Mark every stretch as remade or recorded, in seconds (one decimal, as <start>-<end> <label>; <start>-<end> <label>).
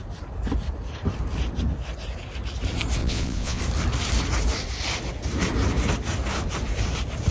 0.0-3.0 recorded; 3.0-3.6 remade; 3.6-7.3 recorded